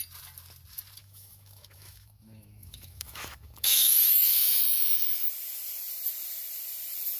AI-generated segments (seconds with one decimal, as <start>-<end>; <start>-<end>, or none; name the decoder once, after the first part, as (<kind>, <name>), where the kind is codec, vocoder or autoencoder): 1.0-5.3 (autoencoder, DAC-VAE)